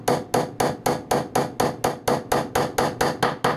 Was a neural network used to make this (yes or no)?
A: no